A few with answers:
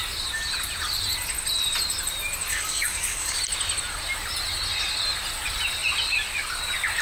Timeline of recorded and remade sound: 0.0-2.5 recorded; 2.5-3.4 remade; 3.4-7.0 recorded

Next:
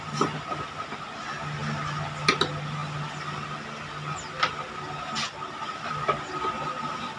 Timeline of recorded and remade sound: 0.0-7.2 recorded

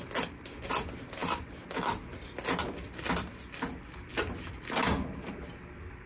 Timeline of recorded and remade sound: 0.0-6.1 recorded

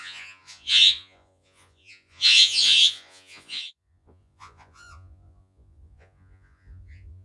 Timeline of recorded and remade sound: 0.0-7.2 remade

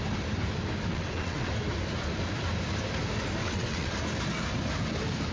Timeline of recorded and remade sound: 0.0-0.9 recorded; 0.9-1.5 remade; 1.5-3.4 recorded; 3.4-3.9 remade; 3.9-5.3 recorded

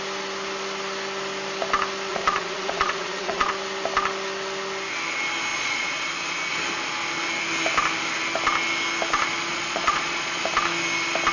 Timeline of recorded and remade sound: 0.0-2.1 recorded; 2.1-3.5 remade; 3.5-5.5 recorded; 5.5-6.0 remade; 6.0-9.5 recorded; 9.5-10.4 remade; 10.4-11.3 recorded

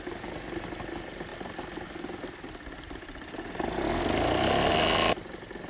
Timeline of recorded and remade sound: 0.0-5.7 recorded